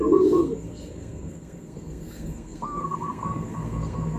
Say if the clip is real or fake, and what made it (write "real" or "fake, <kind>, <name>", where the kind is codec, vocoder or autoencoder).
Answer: fake, codec, SNAC